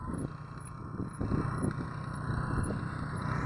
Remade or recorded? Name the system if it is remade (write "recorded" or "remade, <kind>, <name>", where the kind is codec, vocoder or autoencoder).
recorded